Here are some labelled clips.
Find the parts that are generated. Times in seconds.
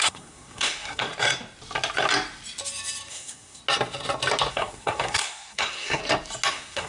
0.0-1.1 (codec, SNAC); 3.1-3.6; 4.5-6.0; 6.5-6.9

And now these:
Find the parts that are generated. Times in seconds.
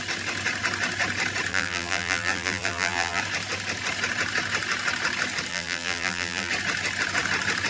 1.5-3.2 (vocoder, BigVGAN v2); 5.5-6.5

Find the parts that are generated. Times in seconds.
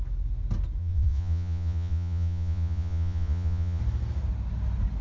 0.8-3.8 (vocoder, Vocos)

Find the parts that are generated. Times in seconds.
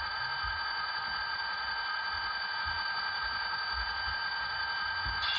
none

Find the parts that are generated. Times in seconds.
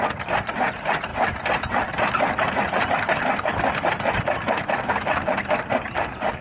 none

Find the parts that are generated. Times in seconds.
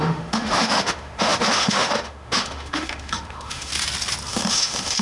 0.0-3.7 (autoencoder, DAC-VAE); 4.3-5.0